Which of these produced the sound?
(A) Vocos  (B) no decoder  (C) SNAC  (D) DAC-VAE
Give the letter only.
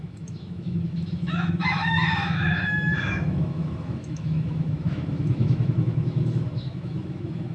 D